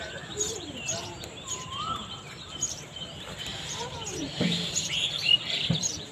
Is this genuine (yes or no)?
no